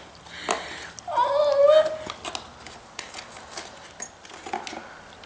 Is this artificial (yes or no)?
no